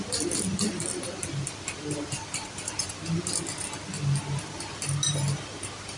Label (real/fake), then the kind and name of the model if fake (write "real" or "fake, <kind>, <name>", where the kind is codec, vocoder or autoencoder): real